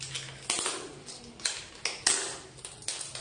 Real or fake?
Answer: real